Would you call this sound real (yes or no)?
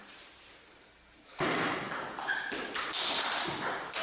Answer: no